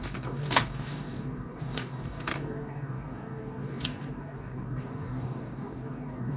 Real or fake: fake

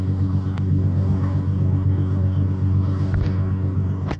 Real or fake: fake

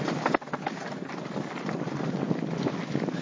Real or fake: real